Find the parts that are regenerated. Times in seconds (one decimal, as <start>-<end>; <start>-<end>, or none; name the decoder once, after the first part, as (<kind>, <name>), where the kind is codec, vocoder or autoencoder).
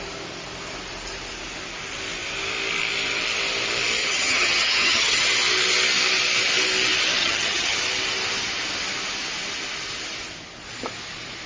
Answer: 4.0-5.2 (vocoder, HiFi-GAN); 7.2-7.8